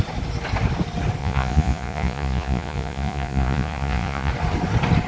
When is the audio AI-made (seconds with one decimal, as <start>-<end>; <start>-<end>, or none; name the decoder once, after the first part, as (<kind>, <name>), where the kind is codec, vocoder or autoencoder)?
1.2-4.3 (vocoder, Vocos)